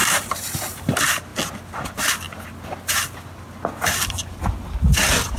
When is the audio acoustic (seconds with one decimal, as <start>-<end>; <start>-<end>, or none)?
0.9-5.4